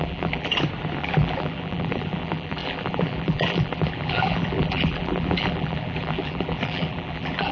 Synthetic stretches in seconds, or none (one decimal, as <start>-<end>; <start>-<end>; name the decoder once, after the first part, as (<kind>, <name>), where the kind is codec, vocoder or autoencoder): 0.0-0.5 (vocoder, BigVGAN v2); 1.0-7.5